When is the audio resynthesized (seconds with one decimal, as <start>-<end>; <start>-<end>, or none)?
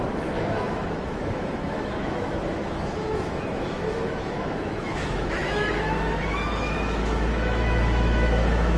0.0-8.8